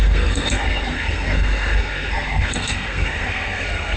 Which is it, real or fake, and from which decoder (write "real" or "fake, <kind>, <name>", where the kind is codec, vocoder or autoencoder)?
fake, codec, SNAC